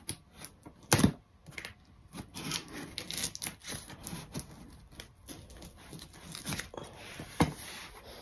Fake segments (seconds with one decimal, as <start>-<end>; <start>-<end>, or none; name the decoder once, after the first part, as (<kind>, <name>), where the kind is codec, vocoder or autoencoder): 3.6-4.2 (vocoder, BigVGAN v2)